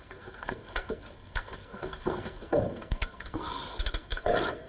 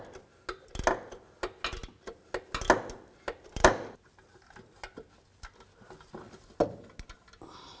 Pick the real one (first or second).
second